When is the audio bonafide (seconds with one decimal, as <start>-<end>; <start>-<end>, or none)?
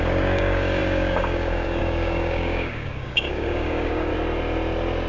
4.1-5.1